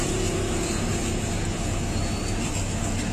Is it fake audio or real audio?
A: real